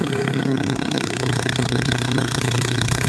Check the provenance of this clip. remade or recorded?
remade